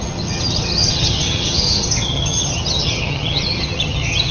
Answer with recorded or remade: remade